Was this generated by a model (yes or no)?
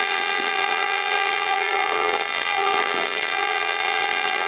yes